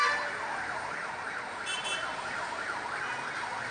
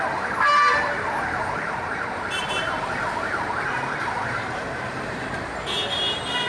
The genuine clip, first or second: first